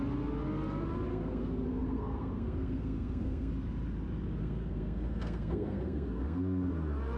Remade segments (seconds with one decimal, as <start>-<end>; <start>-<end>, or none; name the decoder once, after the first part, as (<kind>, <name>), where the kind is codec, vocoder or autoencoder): 1.1-3.5 (codec, SNAC); 4.4-6.7